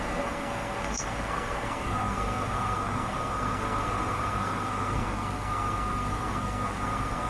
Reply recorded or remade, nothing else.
remade